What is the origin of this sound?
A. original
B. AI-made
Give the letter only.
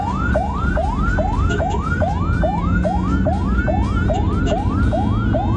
A